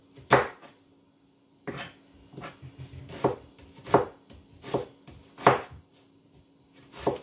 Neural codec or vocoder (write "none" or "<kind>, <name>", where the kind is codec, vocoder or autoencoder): none